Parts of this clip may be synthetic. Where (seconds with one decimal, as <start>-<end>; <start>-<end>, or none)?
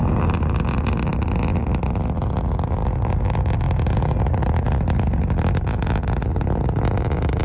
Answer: none